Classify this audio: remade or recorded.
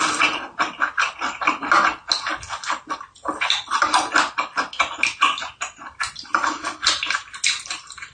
recorded